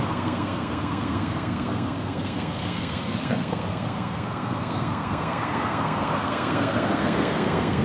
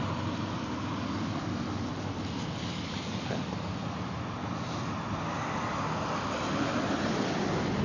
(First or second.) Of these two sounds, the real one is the second